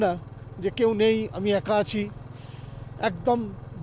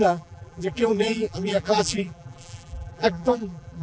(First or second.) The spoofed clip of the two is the second